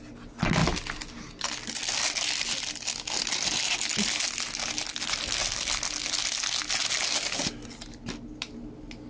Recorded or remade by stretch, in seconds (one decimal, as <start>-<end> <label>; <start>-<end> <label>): 0.0-9.1 recorded

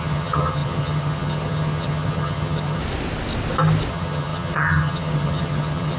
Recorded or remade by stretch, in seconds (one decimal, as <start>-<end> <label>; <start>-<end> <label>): 0.0-2.8 remade; 2.8-3.9 recorded; 3.9-6.0 remade

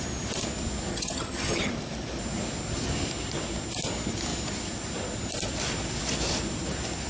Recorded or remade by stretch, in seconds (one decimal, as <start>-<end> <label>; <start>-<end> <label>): 0.0-0.9 recorded; 0.9-1.7 remade; 1.7-7.1 recorded

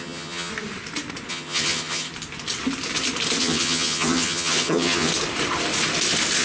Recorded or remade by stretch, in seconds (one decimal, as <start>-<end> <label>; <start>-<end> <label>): 0.0-0.5 remade; 0.5-1.3 recorded; 1.3-2.1 remade; 2.1-3.4 recorded; 3.4-5.1 remade; 5.1-6.4 recorded

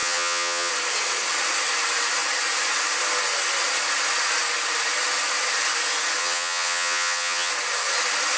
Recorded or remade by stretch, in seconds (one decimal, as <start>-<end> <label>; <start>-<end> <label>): 0.0-0.7 remade; 0.7-6.2 recorded; 6.2-7.5 remade; 7.5-8.4 recorded

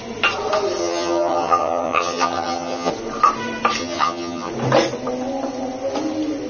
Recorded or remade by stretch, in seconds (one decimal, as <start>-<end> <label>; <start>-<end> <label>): 0.0-0.8 recorded; 0.8-2.9 remade; 2.9-3.8 recorded; 3.8-4.5 remade; 4.5-6.5 recorded

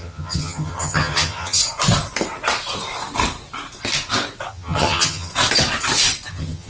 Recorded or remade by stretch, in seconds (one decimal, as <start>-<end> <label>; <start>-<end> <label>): 0.0-1.6 remade; 1.6-4.5 recorded; 4.5-5.3 remade; 5.3-6.3 recorded; 6.3-6.7 remade